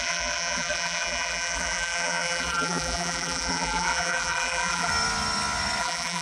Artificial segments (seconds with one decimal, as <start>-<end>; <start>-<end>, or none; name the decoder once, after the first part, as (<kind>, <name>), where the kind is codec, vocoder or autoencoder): 0.0-4.9 (vocoder, BigVGAN v2); 5.8-6.2